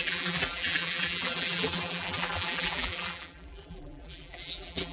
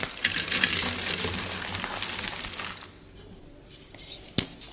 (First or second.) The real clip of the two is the second